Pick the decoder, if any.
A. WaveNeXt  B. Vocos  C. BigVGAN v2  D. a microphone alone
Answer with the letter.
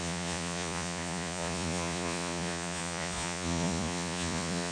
B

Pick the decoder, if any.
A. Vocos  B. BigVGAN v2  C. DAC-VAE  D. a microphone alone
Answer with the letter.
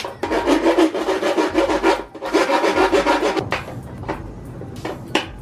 D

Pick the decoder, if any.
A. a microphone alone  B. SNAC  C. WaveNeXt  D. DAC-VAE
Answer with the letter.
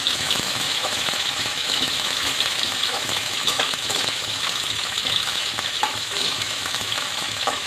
D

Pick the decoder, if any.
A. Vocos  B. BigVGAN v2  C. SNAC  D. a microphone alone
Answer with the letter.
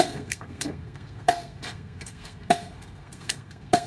C